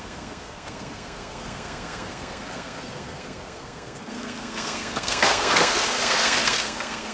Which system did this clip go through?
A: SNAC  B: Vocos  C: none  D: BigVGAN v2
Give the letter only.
A